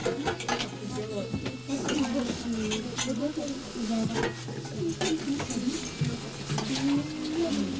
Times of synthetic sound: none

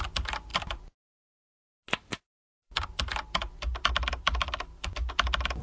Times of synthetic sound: none